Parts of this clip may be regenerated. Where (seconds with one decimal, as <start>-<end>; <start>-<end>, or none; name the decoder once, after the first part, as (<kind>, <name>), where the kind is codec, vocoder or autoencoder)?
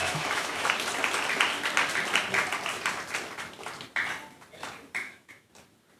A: 0.0-0.7 (autoencoder, DAC-VAE); 5.0-5.5